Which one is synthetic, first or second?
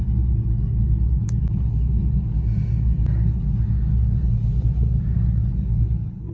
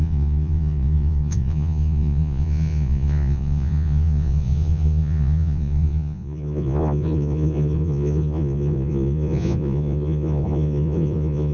second